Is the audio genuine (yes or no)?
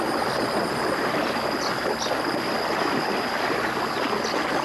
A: yes